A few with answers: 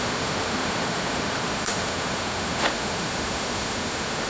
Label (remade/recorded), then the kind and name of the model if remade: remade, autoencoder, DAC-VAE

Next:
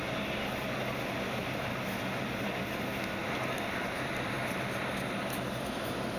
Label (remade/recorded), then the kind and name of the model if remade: recorded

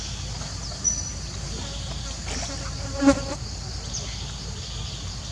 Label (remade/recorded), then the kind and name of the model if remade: recorded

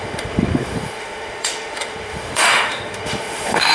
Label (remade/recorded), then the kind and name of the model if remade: remade, autoencoder, DAC-VAE